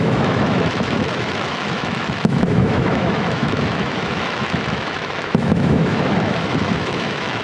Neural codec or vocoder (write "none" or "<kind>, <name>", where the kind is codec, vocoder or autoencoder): autoencoder, DAC-VAE